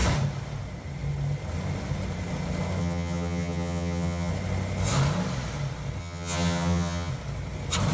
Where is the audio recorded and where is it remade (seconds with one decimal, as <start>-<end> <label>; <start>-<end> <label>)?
0.0-2.8 recorded; 2.8-4.3 remade; 4.3-6.0 recorded; 6.0-7.1 remade; 7.1-7.9 recorded